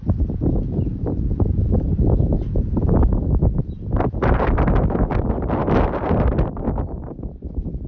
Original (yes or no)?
yes